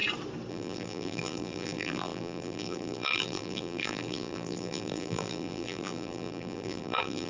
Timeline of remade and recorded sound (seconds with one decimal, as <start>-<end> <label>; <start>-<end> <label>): 0.0-0.5 recorded; 0.5-7.3 remade